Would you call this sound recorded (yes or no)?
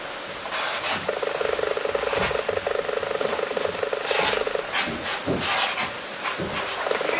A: yes